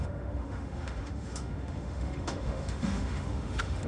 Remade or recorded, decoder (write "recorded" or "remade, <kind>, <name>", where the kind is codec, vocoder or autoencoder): remade, autoencoder, DAC-VAE